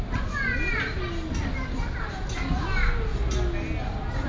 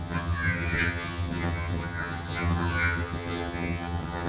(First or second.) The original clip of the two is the first